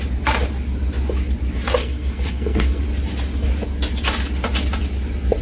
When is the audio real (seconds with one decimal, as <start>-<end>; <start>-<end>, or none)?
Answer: 0.0-1.8; 2.8-5.4

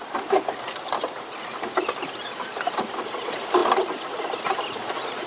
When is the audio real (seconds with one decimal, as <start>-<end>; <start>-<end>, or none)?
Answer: 0.0-5.3

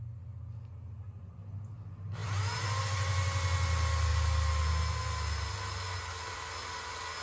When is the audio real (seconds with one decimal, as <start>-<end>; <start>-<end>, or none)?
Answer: 0.0-7.2

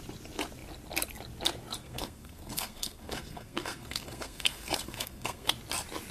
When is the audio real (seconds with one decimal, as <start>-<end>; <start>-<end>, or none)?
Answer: 0.0-1.8; 5.5-6.1

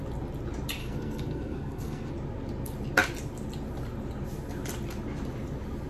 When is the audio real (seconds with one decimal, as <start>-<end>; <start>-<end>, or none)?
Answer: 0.0-0.8; 2.1-5.9